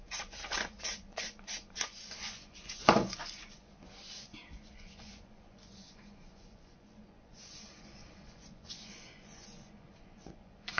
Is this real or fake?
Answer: fake